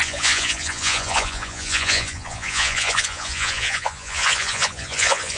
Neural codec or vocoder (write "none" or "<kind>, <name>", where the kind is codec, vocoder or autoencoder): vocoder, Vocos